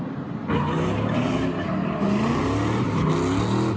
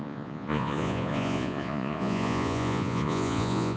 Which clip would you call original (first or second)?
first